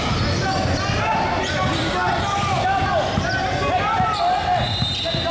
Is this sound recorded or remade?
recorded